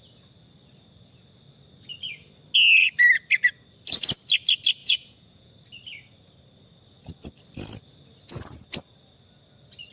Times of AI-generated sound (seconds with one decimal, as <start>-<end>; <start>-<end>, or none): 4.8-5.5